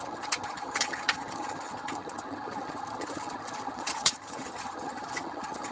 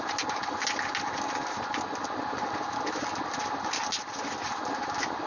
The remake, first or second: first